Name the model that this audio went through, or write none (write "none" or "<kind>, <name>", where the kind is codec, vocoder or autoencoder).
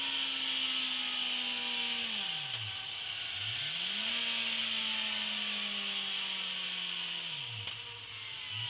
none